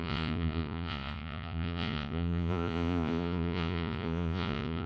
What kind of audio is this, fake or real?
fake